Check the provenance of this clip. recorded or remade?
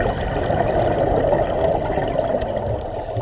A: recorded